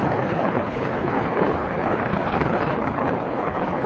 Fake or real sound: fake